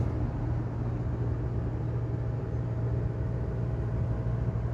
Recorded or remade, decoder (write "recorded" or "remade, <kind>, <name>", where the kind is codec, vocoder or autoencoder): recorded